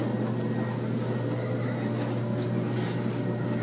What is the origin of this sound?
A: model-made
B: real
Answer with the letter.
B